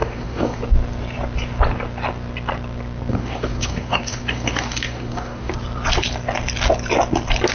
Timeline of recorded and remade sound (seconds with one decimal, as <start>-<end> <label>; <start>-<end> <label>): 0.0-0.6 remade; 0.6-3.1 recorded; 3.1-5.5 remade; 5.5-7.5 recorded

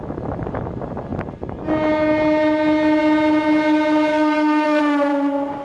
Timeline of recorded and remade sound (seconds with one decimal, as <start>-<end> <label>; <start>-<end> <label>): 0.0-4.1 recorded; 4.1-4.8 remade; 4.8-5.6 recorded

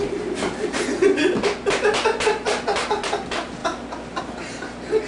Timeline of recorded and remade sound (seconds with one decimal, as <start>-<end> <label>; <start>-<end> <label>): 0.0-5.1 recorded

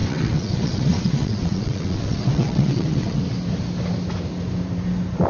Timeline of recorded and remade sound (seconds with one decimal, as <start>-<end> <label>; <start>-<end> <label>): 0.0-3.2 remade; 3.2-5.3 recorded